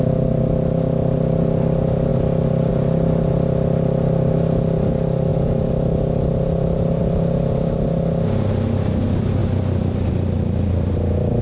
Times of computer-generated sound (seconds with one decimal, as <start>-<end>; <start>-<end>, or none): none